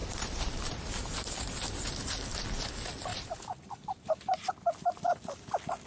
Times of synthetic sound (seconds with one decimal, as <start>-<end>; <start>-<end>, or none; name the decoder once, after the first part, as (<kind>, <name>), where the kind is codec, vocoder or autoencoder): 0.0-1.3 (vocoder, BigVGAN v2); 3.1-4.5